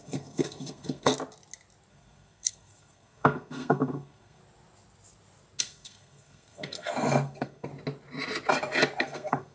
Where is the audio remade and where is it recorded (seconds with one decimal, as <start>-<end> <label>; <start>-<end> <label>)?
0.0-1.1 remade; 1.1-1.9 recorded; 1.9-4.4 remade; 4.4-5.6 recorded; 5.6-7.7 remade; 7.7-9.0 recorded; 9.0-9.5 remade